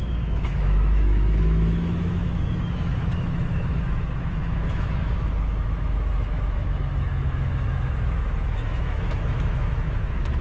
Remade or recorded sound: remade